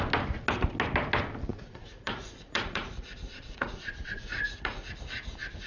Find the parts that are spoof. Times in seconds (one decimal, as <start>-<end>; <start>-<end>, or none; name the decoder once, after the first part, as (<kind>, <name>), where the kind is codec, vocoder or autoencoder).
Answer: 1.5-4.9 (vocoder, Vocos)